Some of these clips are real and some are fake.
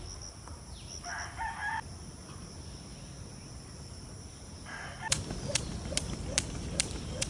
real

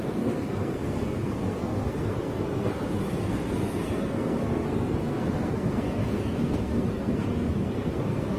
fake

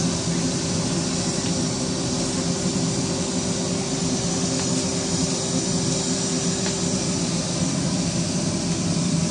real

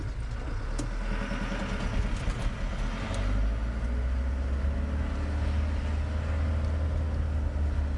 real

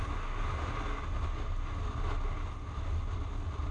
real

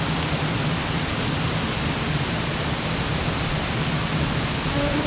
real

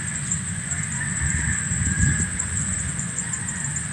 fake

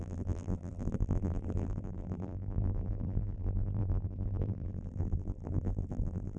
fake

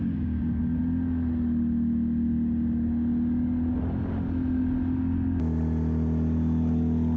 real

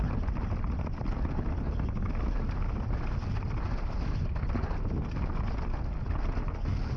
real